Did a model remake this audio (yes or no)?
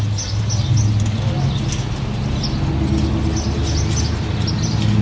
no